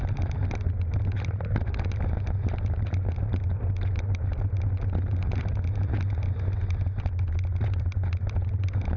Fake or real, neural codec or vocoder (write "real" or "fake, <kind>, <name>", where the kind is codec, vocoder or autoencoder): real